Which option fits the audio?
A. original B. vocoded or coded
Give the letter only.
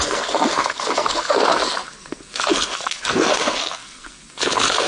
B